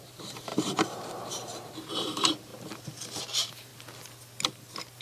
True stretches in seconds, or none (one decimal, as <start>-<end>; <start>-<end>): 2.5-3.2; 3.7-5.0